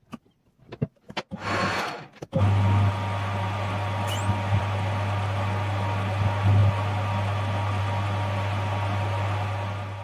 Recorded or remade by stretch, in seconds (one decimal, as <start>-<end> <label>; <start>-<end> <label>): 0.0-10.0 recorded